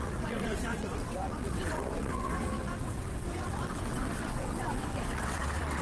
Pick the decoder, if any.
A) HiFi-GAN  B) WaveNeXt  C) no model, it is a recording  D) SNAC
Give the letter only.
B